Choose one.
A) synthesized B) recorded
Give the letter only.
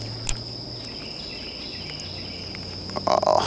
B